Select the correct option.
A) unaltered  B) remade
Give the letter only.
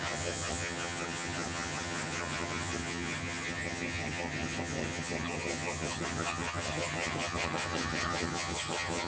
B